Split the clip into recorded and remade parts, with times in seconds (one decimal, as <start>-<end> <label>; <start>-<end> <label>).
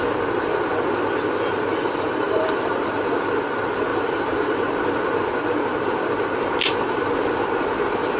0.0-1.7 recorded; 1.7-2.9 remade; 2.9-3.9 recorded; 3.9-4.8 remade; 4.8-8.2 recorded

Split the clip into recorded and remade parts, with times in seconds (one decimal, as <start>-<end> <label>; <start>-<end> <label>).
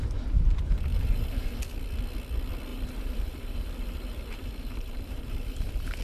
0.0-0.9 recorded; 0.9-1.6 remade; 1.6-2.7 recorded; 2.7-6.0 remade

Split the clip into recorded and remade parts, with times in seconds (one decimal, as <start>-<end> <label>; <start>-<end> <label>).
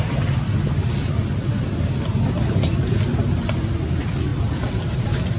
0.0-0.8 remade; 0.8-3.9 recorded; 3.9-5.4 remade